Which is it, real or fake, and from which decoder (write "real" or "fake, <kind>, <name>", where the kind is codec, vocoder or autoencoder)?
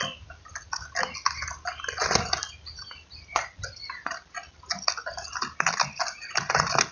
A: real